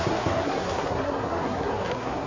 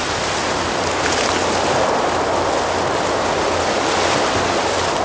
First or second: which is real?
second